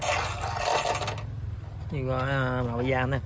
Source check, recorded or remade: recorded